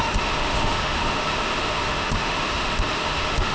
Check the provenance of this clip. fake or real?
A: fake